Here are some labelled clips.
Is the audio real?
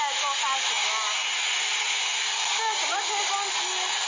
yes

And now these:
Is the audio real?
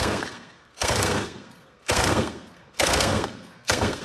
no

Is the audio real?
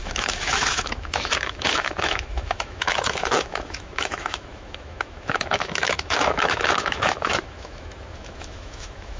no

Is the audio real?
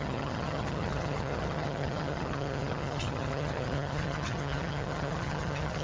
no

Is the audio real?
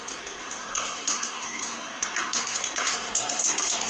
no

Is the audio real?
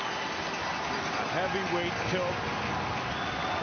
yes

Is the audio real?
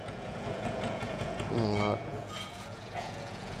no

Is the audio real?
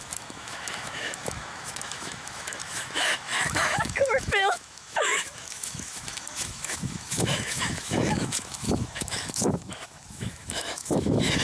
no